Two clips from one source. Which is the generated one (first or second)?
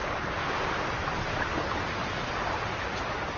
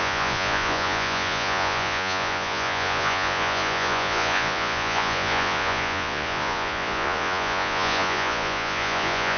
second